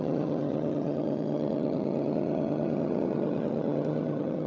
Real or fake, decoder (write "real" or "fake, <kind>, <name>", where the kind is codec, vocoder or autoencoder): fake, vocoder, HiFi-GAN